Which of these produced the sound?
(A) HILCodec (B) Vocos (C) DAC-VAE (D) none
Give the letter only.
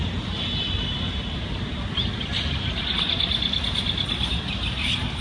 D